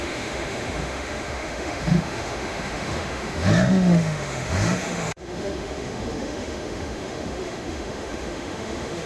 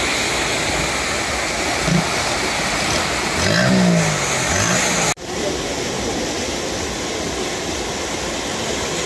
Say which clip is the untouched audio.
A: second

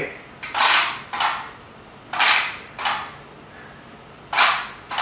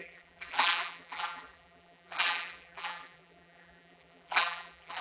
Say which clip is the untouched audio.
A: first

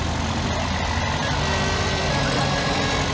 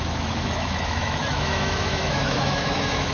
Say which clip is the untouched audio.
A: first